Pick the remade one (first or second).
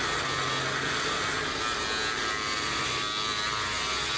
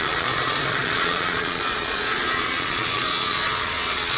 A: second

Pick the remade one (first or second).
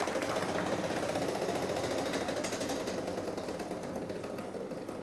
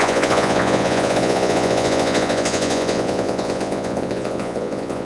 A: second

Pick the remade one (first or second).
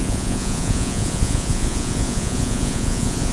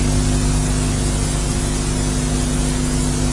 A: first